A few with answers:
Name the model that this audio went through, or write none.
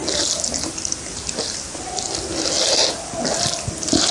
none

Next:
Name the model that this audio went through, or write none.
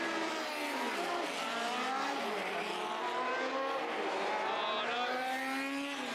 none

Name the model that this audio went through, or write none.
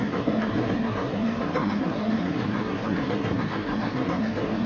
codec, SNAC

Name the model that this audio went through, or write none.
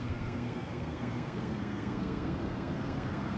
codec, SNAC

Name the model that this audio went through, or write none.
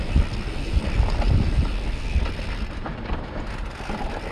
none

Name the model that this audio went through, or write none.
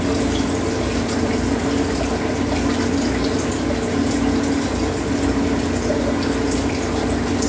none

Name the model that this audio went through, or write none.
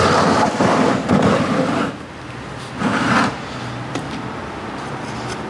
none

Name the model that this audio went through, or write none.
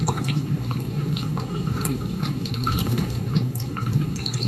codec, SNAC